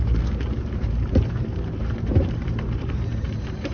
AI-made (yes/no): yes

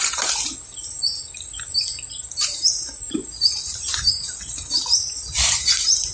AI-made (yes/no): yes